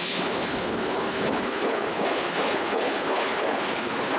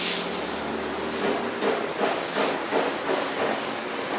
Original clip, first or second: second